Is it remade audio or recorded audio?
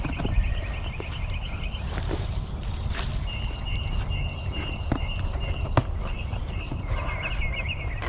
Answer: recorded